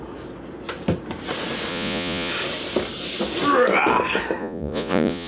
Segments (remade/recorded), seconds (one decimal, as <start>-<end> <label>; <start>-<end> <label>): 0.0-1.7 recorded; 1.7-2.3 remade; 2.3-4.4 recorded; 4.4-5.3 remade